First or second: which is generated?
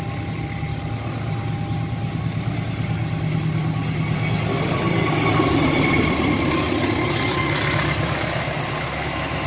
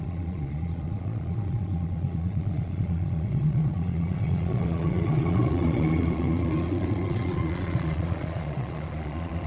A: second